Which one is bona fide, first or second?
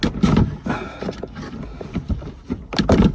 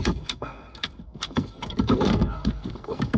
first